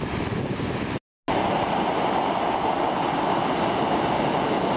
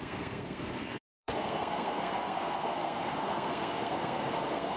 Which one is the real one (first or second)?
first